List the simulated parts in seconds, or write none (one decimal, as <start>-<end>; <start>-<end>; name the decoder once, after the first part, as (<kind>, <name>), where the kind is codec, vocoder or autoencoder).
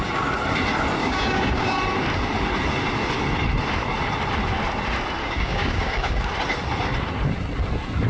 1.0-1.8 (codec, DAC); 5.2-6.3